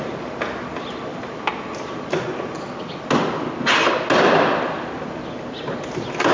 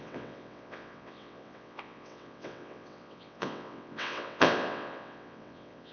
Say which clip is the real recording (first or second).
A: first